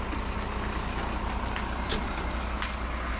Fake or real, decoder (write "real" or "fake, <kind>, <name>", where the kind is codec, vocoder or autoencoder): real